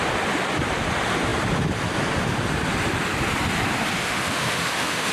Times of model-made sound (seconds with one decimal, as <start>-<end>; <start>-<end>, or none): 4.0-5.1